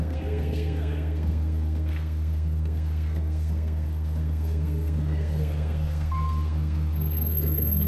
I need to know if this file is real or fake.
fake